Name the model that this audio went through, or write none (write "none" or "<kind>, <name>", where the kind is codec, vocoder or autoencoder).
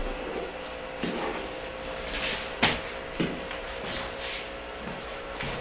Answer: none